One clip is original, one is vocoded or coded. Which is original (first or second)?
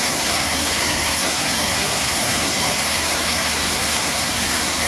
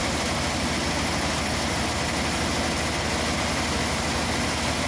second